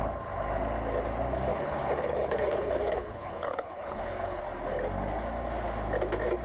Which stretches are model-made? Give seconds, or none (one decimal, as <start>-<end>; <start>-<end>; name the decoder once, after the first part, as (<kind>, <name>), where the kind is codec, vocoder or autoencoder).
1.5-4.4 (codec, HILCodec)